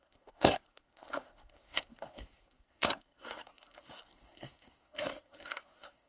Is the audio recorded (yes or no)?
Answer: no